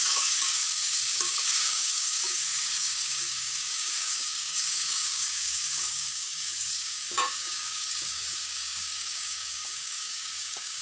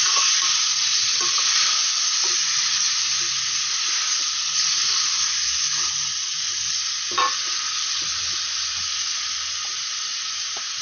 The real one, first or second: second